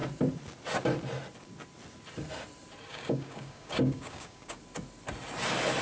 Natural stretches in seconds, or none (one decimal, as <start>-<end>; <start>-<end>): 0.0-2.9; 4.6-5.8